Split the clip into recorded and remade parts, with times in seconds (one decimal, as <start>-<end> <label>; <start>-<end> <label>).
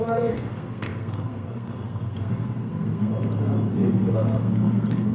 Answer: 0.0-3.1 remade; 3.1-3.7 recorded; 3.7-5.1 remade